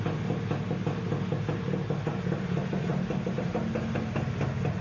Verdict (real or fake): real